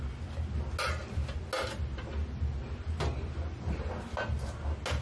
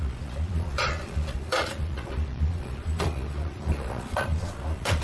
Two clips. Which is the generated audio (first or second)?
second